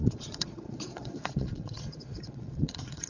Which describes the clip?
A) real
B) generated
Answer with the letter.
B